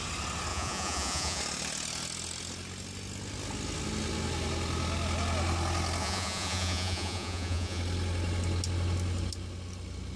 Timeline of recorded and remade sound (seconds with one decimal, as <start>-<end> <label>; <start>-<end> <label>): 0.0-0.5 recorded; 0.5-1.4 remade; 1.4-6.0 recorded; 6.0-7.8 remade; 7.8-10.2 recorded